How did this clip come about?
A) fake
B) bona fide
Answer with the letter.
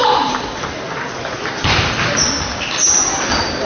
B